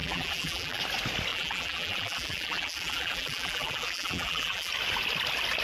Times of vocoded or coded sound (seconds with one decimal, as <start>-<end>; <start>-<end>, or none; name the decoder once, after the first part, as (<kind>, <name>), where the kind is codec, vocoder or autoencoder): 0.0-0.8 (vocoder, BigVGAN v2); 1.3-4.7